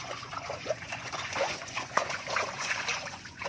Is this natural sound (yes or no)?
no